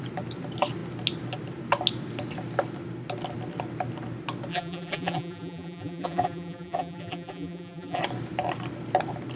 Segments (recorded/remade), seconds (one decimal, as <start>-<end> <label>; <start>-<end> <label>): 0.0-4.5 recorded; 4.5-8.0 remade; 8.0-9.4 recorded